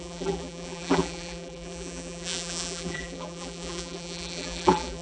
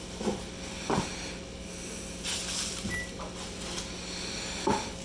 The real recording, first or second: second